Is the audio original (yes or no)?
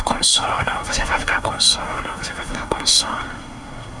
no